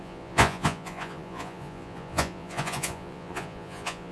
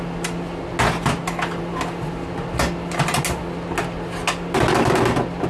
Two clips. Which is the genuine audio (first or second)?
second